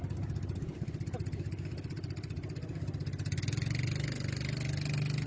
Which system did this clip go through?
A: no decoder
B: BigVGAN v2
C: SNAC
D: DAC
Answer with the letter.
A